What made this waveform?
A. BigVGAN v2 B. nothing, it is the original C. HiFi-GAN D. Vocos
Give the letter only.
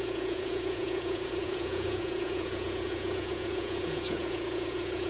D